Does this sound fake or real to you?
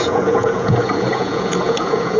fake